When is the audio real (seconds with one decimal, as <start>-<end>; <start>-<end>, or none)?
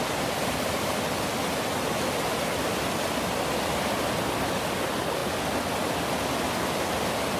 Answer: 0.0-7.4